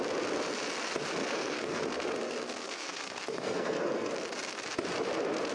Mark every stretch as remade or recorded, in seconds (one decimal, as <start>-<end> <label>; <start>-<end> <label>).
0.0-1.2 recorded; 1.2-4.1 remade; 4.1-5.5 recorded